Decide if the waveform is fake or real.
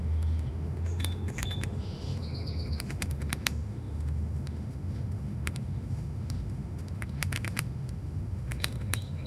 fake